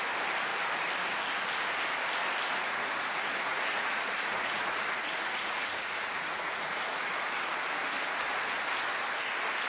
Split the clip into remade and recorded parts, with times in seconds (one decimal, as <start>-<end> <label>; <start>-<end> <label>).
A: 0.0-2.5 recorded; 2.5-7.2 remade; 7.2-9.7 recorded